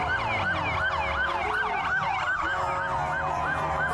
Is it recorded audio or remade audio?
recorded